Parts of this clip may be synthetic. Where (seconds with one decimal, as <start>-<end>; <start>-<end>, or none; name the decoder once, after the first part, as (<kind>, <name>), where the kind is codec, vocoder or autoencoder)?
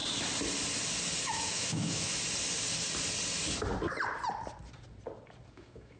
1.2-2.1 (autoencoder, DAC-VAE); 5.5-6.0